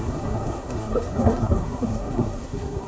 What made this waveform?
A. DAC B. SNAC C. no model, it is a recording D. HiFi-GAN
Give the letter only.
B